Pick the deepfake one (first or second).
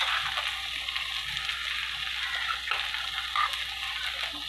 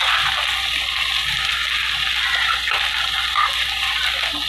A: second